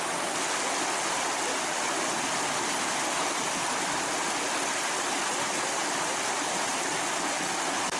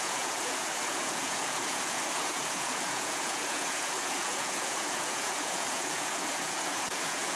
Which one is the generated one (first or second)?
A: second